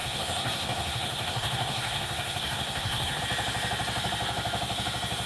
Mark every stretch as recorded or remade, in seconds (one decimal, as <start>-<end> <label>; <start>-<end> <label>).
0.0-3.2 remade; 3.2-5.3 recorded